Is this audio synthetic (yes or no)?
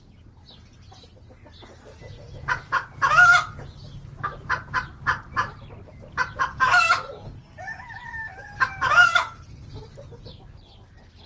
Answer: no